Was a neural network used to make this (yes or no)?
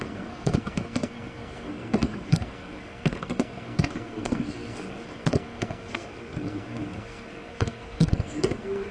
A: yes